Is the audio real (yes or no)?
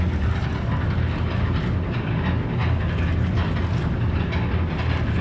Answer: yes